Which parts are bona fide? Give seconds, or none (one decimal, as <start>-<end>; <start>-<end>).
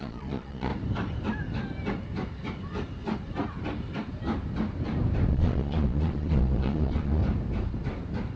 0.7-5.3; 7.2-8.4